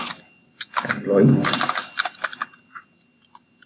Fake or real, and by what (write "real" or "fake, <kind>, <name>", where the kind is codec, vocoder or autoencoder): real